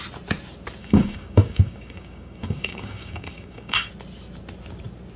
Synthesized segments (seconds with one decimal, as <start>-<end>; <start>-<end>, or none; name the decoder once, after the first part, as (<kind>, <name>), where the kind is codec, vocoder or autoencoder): 0.8-3.9 (codec, DAC)